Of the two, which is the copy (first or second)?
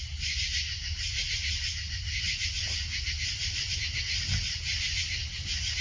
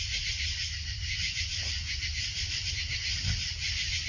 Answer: second